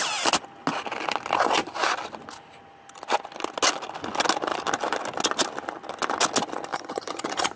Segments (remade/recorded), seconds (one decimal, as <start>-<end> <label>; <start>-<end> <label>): 0.0-6.7 recorded; 6.7-7.6 remade